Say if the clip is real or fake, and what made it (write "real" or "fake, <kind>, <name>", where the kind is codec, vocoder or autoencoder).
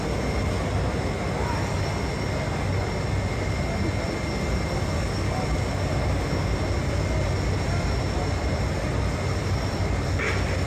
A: real